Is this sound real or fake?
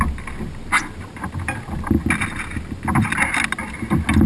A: real